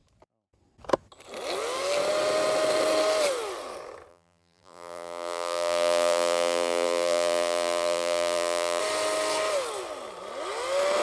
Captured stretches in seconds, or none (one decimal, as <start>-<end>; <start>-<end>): 0.0-4.1; 8.8-11.0